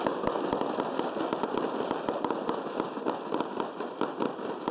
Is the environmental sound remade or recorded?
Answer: recorded